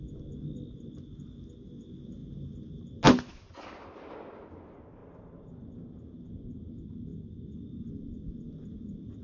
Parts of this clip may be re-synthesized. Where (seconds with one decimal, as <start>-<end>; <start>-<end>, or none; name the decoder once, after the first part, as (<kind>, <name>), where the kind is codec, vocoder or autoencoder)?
5.0-5.7 (vocoder, BigVGAN v2); 7.1-7.9